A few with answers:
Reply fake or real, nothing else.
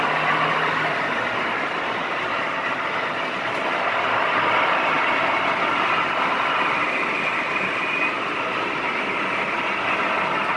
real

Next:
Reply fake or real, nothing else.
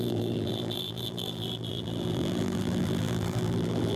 fake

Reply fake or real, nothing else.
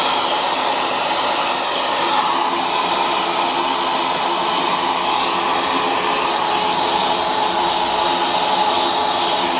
real